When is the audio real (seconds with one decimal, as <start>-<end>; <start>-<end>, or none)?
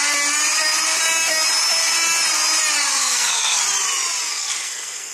0.0-2.9; 3.6-4.3